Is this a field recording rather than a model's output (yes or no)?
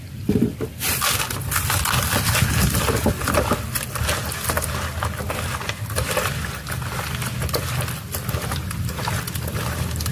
yes